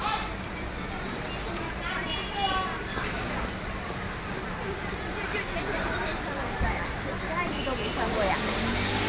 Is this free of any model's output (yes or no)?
yes